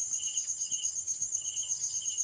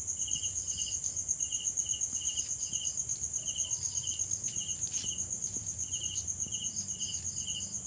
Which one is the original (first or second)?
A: second